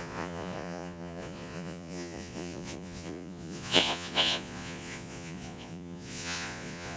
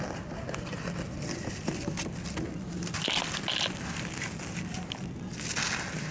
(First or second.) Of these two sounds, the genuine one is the second